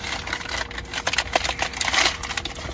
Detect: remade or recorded recorded